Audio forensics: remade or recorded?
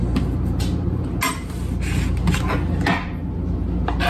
recorded